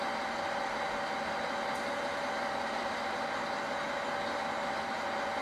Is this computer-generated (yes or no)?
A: no